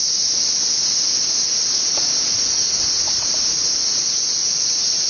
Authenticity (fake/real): real